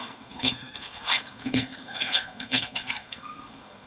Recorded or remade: remade